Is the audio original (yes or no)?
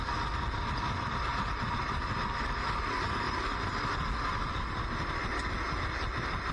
yes